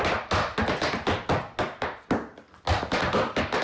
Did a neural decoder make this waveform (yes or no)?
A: no